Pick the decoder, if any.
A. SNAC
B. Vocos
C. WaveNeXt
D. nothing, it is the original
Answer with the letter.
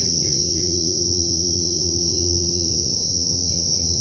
B